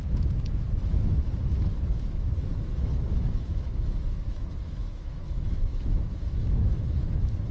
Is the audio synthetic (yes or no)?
yes